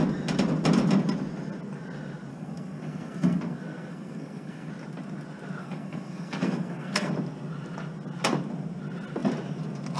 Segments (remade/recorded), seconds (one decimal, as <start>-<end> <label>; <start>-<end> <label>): 0.0-2.3 recorded; 2.3-4.7 remade; 4.7-5.6 recorded; 5.6-7.1 remade; 7.1-10.0 recorded

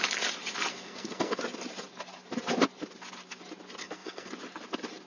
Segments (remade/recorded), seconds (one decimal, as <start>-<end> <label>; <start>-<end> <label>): 0.0-0.7 recorded; 0.7-1.4 remade; 1.4-3.8 recorded; 3.8-4.3 remade; 4.3-5.1 recorded

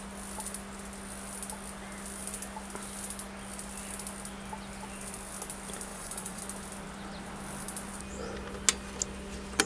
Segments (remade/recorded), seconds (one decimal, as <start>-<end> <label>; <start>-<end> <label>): 0.0-5.9 recorded; 5.9-6.4 remade; 6.4-9.7 recorded

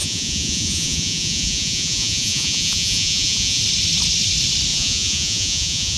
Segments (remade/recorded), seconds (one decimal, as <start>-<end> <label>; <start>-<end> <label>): 0.0-3.6 remade; 3.6-4.7 recorded; 4.7-6.0 remade